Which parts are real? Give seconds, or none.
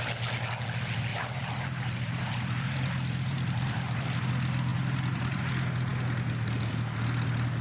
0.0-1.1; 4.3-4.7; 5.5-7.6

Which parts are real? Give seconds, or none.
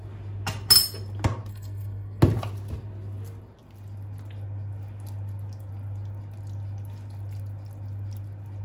0.0-1.5; 2.2-8.6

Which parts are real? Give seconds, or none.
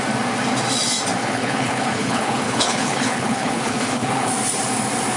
0.0-1.2; 4.3-5.2